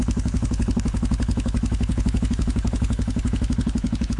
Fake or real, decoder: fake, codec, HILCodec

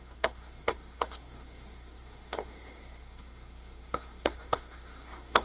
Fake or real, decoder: fake, codec, SNAC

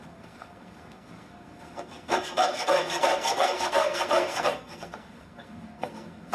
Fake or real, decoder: fake, codec, SNAC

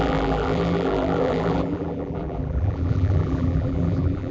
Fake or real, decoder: fake, vocoder, BigVGAN v2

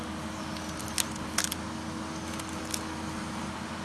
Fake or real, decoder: real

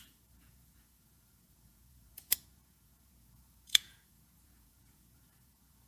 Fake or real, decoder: fake, vocoder, Vocos